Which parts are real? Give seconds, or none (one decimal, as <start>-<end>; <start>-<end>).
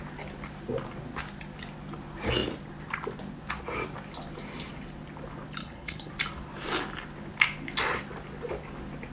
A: 0.0-5.6; 6.1-9.1